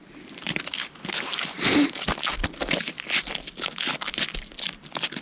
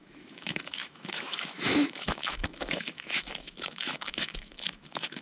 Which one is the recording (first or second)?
first